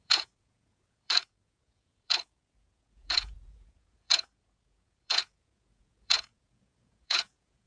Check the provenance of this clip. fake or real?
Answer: fake